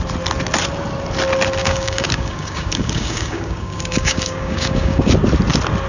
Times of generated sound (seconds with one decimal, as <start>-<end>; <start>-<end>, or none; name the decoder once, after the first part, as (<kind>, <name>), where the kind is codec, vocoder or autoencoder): 1.6-5.1 (codec, DAC)

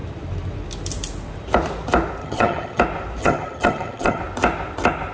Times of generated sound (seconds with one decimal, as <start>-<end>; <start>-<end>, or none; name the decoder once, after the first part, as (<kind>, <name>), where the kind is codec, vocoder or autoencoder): 2.2-2.8 (vocoder, HiFi-GAN); 3.2-4.2

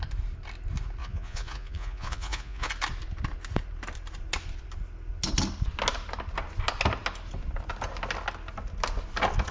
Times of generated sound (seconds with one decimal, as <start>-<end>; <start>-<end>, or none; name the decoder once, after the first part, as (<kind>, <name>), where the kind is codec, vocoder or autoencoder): 1.0-2.7 (vocoder, Vocos)

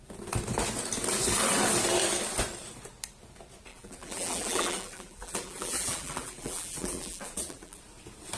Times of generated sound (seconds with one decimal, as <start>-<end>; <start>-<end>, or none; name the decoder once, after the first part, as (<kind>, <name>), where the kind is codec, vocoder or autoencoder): 3.7-7.8 (vocoder, BigVGAN v2)